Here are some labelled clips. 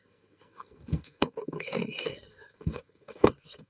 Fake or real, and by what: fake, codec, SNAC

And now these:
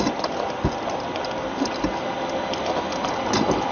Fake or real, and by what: real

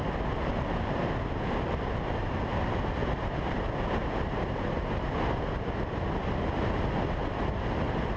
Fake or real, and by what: real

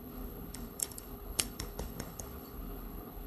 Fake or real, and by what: fake, codec, HILCodec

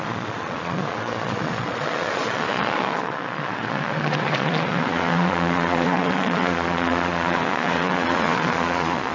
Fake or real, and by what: fake, vocoder, Vocos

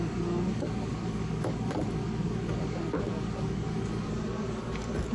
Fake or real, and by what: fake, codec, DAC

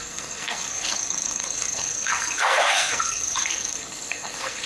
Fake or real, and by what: fake, codec, SNAC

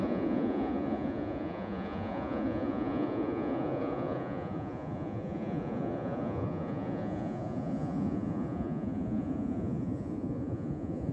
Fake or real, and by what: fake, vocoder, Vocos